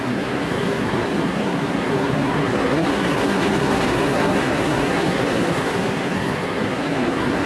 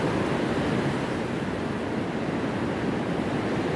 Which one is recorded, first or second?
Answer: second